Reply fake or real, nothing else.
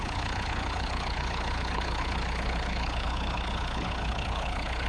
fake